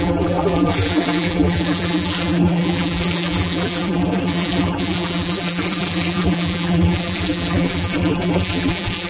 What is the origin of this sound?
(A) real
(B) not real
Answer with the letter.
B